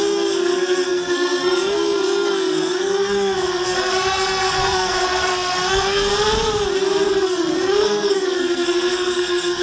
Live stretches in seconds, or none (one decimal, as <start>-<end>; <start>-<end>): 6.1-7.1